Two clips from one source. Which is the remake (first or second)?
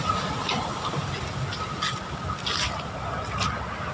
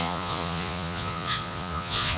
second